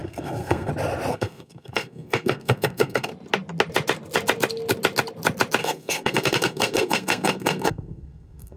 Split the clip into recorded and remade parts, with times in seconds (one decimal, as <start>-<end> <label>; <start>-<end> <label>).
0.0-0.7 remade; 0.7-1.1 recorded; 1.1-3.1 remade; 3.1-5.6 recorded; 5.6-8.6 remade